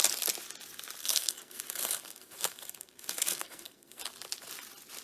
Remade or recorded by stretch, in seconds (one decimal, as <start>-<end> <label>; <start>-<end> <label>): 0.0-1.0 recorded; 1.0-4.0 remade; 4.0-5.0 recorded